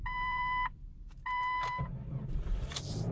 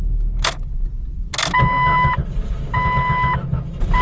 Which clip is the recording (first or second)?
second